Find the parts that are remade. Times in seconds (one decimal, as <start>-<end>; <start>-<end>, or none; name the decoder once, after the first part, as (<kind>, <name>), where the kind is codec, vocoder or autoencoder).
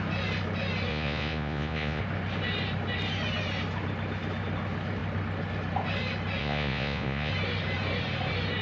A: 0.9-2.0 (vocoder, Vocos); 6.4-7.3